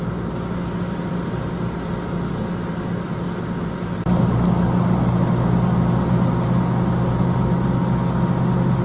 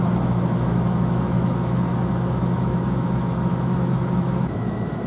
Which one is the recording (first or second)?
first